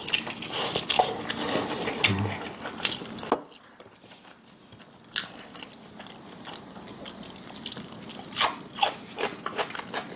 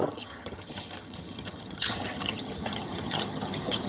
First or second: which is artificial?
second